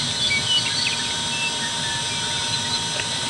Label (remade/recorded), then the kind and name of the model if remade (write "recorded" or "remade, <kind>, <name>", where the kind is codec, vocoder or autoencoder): recorded